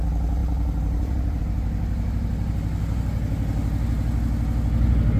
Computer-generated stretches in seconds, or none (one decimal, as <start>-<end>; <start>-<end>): 0.4-1.4